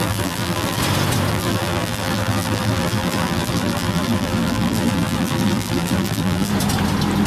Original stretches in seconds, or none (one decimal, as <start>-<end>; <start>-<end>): 0.8-1.3; 6.5-7.3